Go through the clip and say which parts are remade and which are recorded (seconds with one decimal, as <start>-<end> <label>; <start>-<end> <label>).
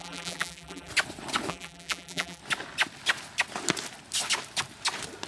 0.0-0.9 remade; 0.9-1.5 recorded; 1.5-2.4 remade; 2.4-5.3 recorded